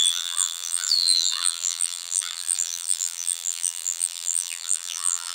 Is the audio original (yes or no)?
no